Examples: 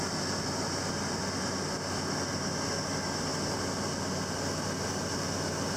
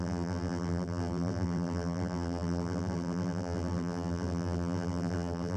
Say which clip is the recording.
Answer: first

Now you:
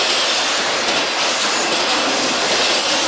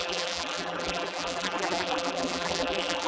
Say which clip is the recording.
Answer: first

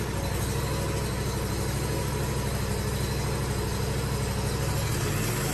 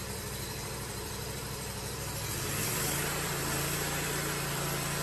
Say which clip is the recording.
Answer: first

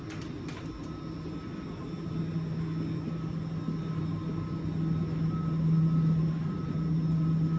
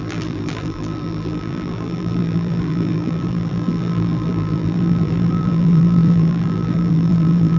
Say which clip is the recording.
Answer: first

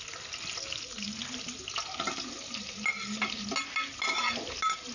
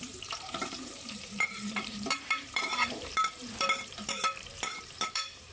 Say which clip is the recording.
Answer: first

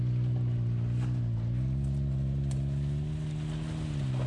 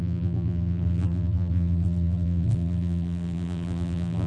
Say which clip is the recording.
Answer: first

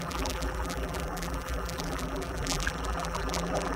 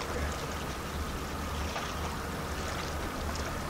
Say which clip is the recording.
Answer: second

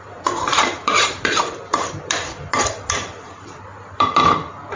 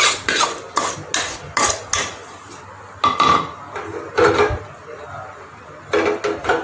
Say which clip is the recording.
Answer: second